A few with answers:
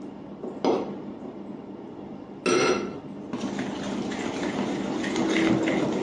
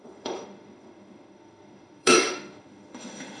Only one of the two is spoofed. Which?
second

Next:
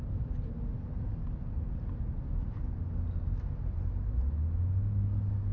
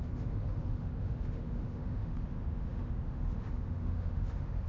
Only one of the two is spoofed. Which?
second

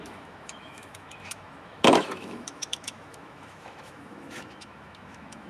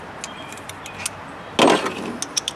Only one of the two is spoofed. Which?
first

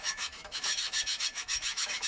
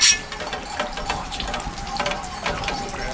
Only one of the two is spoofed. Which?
first